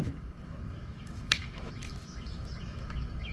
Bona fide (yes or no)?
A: no